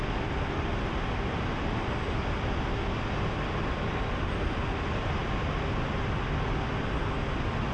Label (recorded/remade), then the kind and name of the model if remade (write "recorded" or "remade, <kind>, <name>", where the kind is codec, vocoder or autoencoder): recorded